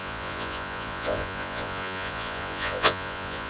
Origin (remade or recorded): remade